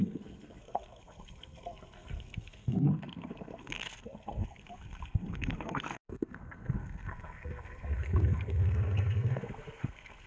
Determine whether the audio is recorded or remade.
remade